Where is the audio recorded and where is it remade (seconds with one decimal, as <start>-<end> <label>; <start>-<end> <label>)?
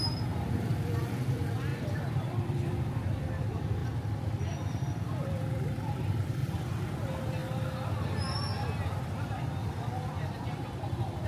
0.0-3.8 remade; 3.8-4.3 recorded; 4.3-7.4 remade; 7.4-10.5 recorded; 10.5-11.3 remade